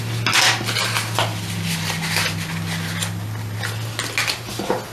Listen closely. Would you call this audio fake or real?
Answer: real